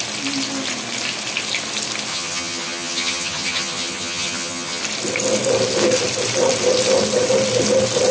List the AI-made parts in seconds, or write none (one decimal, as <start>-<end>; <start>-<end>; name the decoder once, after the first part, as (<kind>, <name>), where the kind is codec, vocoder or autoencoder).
2.1-4.8 (vocoder, HiFi-GAN)